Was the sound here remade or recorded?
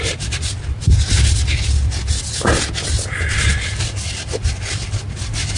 recorded